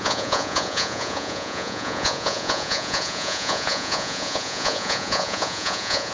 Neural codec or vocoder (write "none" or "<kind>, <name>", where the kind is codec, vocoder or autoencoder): vocoder, Vocos